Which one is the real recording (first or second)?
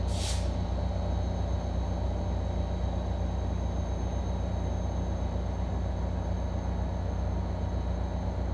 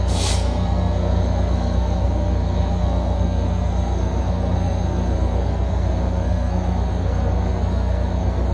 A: first